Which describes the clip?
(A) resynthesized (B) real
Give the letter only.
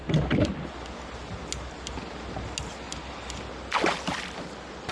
B